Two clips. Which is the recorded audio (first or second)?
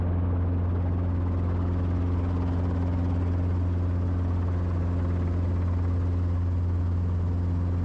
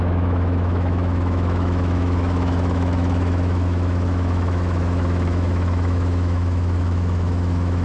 first